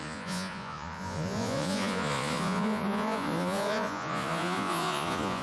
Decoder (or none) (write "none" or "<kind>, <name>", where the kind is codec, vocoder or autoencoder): vocoder, Vocos